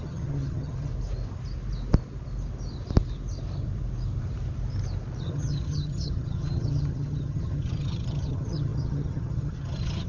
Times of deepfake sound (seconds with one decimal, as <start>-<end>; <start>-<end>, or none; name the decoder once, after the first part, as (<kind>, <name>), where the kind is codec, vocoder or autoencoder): 0.0-0.9 (vocoder, HiFi-GAN); 5.2-10.1